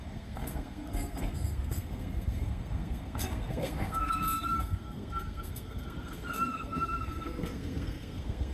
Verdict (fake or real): fake